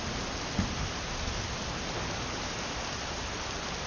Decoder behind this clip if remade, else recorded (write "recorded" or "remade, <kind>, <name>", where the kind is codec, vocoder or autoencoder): recorded